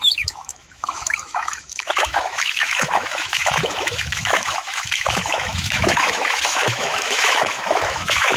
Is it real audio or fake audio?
fake